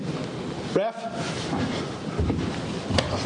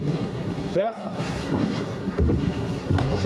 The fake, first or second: second